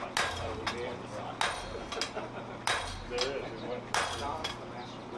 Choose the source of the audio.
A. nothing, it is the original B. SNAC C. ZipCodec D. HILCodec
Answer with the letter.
A